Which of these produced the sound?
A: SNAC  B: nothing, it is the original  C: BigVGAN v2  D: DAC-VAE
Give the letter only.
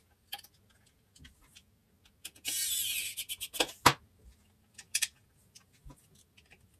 B